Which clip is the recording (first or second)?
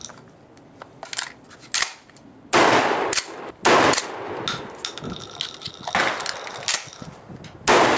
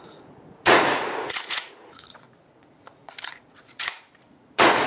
first